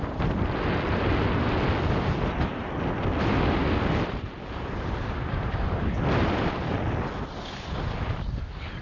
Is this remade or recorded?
recorded